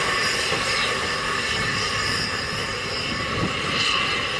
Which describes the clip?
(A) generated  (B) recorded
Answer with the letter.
B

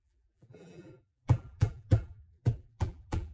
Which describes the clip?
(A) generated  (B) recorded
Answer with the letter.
A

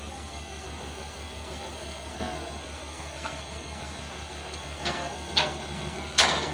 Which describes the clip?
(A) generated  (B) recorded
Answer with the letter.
A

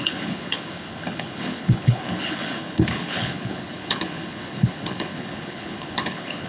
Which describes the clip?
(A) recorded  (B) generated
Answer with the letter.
B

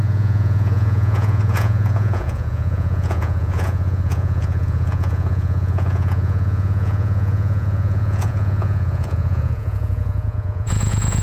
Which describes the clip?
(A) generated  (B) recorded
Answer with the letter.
A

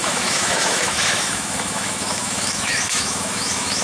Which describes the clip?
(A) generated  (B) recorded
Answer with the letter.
A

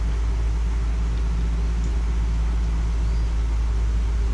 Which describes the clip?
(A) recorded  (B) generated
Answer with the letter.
A